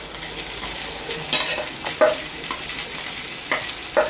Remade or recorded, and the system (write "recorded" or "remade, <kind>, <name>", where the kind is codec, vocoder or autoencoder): recorded